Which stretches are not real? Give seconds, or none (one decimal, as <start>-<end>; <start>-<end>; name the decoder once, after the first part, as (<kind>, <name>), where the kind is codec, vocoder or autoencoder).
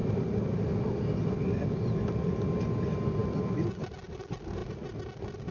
none